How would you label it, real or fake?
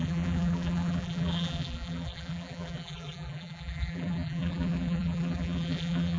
fake